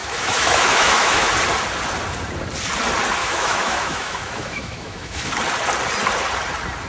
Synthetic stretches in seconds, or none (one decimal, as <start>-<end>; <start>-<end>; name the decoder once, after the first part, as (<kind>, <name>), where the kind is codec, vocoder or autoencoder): 0.0-1.3 (autoencoder, DAC-VAE); 3.2-5.3